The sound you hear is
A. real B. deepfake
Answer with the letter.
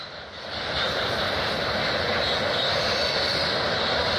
A